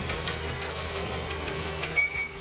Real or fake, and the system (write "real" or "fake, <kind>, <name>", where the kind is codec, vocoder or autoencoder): fake, codec, SNAC